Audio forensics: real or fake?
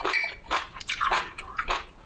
fake